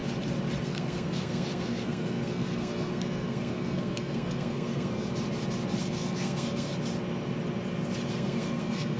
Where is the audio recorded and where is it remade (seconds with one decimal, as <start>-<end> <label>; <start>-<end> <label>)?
0.0-0.6 recorded; 0.6-5.1 remade; 5.1-5.8 recorded; 5.8-6.7 remade; 6.7-8.1 recorded; 8.1-9.0 remade